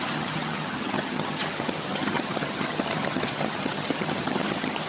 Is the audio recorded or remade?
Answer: remade